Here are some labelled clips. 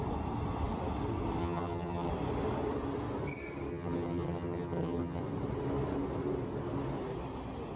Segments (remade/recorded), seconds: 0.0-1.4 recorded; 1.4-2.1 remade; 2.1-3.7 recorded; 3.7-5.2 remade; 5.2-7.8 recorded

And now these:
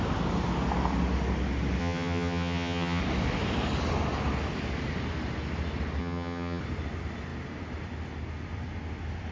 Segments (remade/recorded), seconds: 0.0-1.8 recorded; 1.8-3.0 remade; 3.0-6.0 recorded; 6.0-6.6 remade; 6.6-9.3 recorded

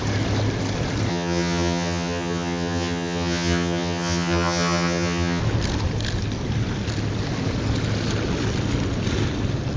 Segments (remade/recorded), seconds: 0.0-1.1 recorded; 1.1-5.4 remade; 5.4-9.8 recorded

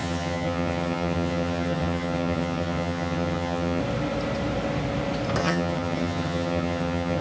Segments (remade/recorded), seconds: 0.0-3.8 remade; 3.8-5.4 recorded; 5.4-7.2 remade